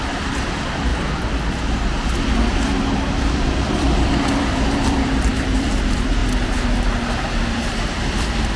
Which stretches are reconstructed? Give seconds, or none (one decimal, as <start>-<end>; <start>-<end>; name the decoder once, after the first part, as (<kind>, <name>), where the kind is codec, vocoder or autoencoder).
0.0-0.9 (vocoder, BigVGAN v2); 3.1-6.2; 7.5-8.6